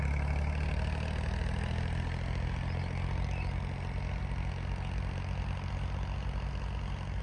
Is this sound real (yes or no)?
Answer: yes